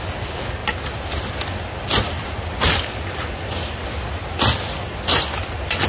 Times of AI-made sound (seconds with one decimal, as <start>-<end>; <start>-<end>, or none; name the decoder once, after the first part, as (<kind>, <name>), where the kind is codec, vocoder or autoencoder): none

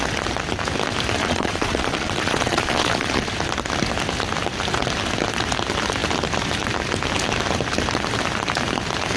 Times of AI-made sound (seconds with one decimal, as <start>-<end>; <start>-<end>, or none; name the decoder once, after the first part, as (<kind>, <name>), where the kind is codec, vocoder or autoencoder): 1.2-3.3 (vocoder, Vocos)